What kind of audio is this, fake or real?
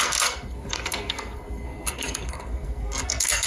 fake